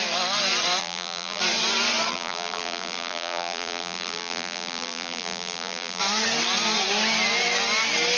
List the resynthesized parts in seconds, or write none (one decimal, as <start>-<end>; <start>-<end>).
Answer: 0.8-1.4; 2.1-6.0